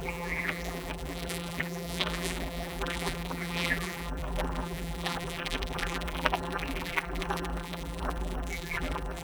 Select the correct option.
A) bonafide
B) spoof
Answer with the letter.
B